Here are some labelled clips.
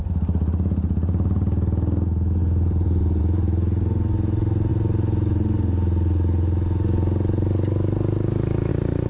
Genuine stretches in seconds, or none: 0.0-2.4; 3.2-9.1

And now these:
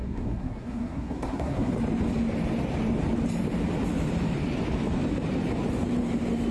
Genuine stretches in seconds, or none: 1.7-6.5

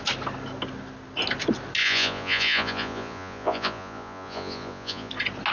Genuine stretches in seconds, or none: 0.0-1.8; 5.1-5.5

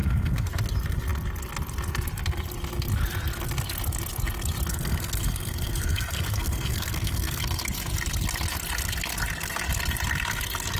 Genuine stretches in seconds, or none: 0.5-4.7; 7.4-10.8

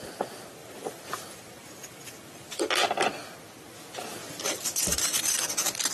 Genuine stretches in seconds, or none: 0.0-0.6; 2.6-4.2; 5.0-5.9